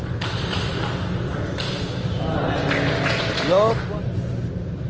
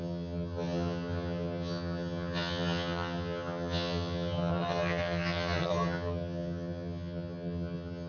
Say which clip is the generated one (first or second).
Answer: second